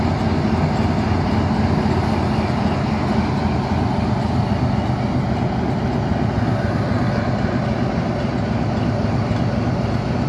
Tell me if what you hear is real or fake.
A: real